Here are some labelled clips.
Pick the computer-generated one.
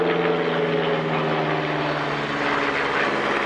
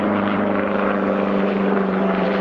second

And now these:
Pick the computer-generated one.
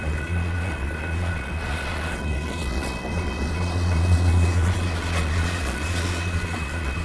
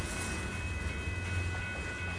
first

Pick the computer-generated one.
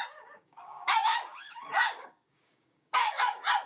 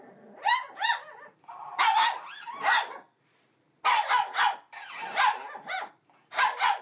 first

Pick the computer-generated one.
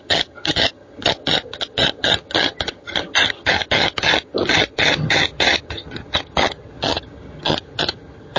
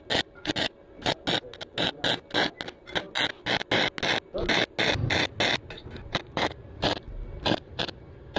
first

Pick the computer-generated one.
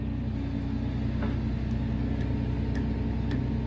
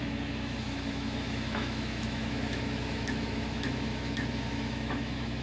second